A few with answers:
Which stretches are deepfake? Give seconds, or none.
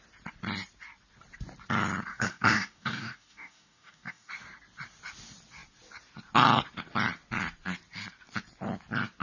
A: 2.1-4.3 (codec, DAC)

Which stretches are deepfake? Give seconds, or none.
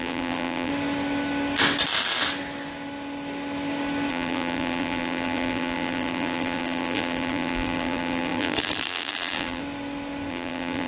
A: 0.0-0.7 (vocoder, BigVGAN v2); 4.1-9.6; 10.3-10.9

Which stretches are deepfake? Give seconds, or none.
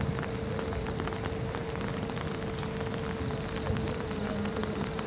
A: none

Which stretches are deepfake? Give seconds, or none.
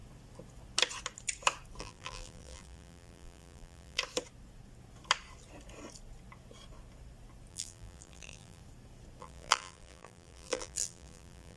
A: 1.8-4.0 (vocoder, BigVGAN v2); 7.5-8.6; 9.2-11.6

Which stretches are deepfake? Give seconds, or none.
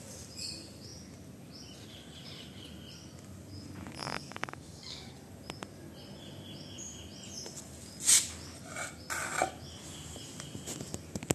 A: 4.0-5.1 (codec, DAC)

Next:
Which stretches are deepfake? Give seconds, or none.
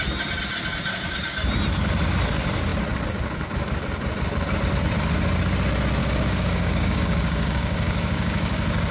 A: 0.9-1.5 (codec, DAC); 6.0-8.9